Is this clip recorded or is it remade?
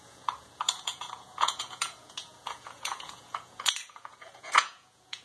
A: remade